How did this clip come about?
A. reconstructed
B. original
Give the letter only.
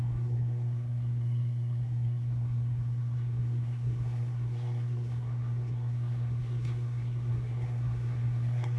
A